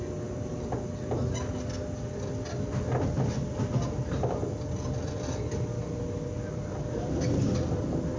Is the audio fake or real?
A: real